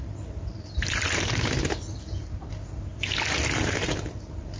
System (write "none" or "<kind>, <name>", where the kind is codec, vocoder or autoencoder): none